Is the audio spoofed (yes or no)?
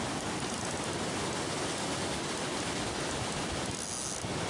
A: no